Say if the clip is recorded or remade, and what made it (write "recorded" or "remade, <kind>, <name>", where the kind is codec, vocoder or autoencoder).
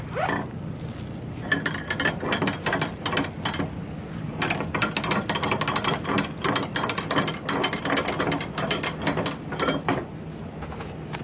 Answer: recorded